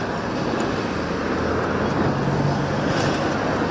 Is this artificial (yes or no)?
no